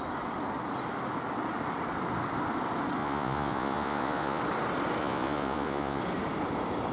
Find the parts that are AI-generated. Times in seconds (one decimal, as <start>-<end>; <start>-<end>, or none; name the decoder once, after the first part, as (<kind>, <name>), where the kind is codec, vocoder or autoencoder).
3.0-4.4 (vocoder, Vocos); 5.0-6.0